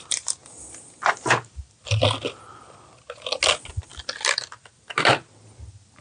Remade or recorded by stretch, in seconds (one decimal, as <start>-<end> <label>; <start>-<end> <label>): 0.0-6.0 recorded